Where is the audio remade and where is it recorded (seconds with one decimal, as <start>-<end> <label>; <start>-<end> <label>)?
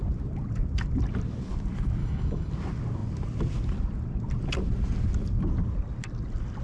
0.0-2.0 recorded; 2.0-2.5 remade; 2.5-6.6 recorded